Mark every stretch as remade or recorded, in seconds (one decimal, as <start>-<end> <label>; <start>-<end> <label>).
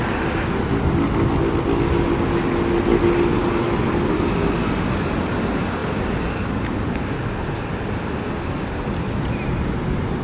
0.0-10.2 recorded